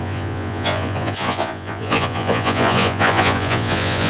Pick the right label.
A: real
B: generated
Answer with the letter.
B